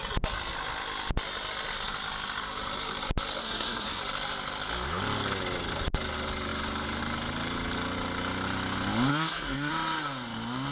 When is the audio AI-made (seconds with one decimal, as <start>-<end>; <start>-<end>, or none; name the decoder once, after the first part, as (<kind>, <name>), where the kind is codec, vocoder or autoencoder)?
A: 3.4-4.0 (codec, SNAC); 9.1-9.7